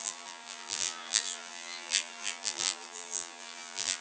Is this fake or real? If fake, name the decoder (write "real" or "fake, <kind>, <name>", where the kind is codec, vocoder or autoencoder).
fake, vocoder, BigVGAN v2